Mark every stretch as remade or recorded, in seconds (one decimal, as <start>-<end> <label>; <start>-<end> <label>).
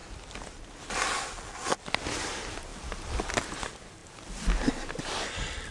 0.0-5.7 recorded